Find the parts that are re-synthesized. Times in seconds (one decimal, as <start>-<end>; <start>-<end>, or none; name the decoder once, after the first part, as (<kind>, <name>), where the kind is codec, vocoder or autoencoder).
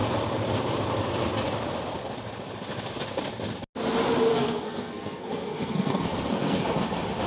4.3-6.6 (codec, SNAC)